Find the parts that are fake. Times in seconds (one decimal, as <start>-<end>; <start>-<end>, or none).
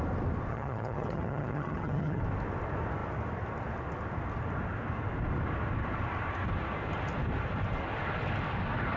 0.5-2.2